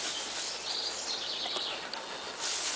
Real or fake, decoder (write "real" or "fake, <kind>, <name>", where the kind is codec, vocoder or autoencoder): real